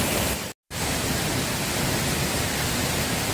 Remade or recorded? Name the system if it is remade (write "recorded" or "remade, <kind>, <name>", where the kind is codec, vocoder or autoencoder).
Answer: recorded